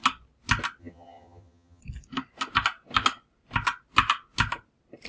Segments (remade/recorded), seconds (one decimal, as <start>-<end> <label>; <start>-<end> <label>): 0.0-0.8 recorded; 0.8-1.8 remade; 1.8-5.1 recorded